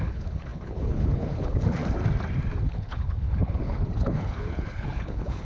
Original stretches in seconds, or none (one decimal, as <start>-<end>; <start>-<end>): 1.8-2.6